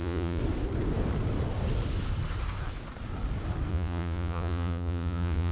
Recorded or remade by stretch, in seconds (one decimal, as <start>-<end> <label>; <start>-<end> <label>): 0.0-0.4 remade; 0.4-3.7 recorded; 3.7-5.5 remade